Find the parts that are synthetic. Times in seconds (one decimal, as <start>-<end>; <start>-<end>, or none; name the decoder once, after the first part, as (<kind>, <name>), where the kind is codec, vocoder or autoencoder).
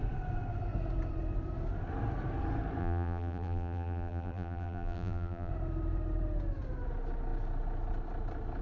2.8-5.5 (vocoder, BigVGAN v2)